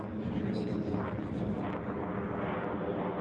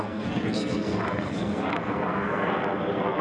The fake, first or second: second